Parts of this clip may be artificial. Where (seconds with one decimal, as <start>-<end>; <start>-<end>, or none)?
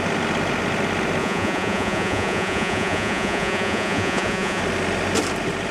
1.2-4.6